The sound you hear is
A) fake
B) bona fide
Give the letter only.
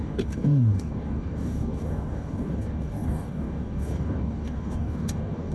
A